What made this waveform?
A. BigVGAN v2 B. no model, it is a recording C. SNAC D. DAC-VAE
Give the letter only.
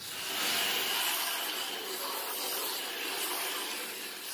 B